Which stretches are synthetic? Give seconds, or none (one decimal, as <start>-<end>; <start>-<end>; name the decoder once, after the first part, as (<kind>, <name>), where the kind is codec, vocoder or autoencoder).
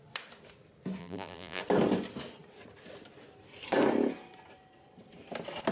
1.0-1.6 (vocoder, BigVGAN v2)